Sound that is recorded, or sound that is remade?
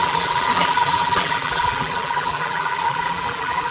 remade